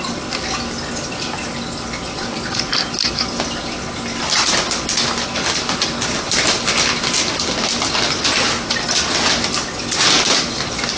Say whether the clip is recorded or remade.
recorded